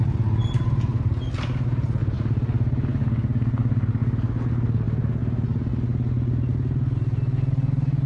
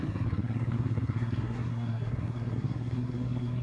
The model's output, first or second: second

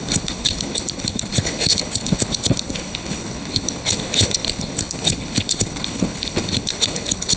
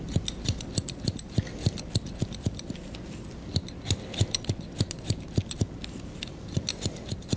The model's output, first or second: first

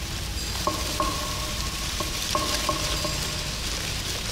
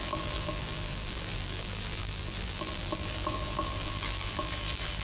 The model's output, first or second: second